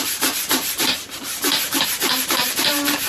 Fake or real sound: fake